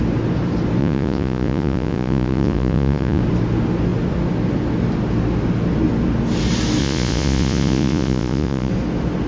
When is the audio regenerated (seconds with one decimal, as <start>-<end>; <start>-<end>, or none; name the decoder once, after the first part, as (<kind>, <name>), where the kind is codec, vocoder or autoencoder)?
0.8-3.2 (vocoder, Vocos); 6.8-8.7